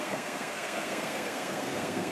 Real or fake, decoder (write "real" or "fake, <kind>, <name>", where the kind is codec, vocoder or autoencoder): fake, codec, SNAC